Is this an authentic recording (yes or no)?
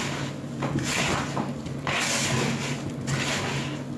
yes